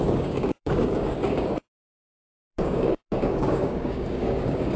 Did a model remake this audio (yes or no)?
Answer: yes